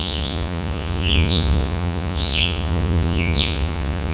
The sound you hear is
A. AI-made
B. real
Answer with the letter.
A